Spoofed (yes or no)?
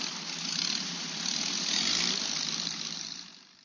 yes